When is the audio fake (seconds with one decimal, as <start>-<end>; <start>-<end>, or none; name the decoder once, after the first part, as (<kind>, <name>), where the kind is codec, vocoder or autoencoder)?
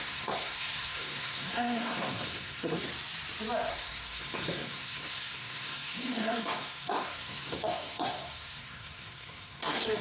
0.0-2.9 (codec, SNAC); 3.7-10.0